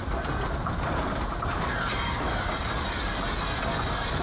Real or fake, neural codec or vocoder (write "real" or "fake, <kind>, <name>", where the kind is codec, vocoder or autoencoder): real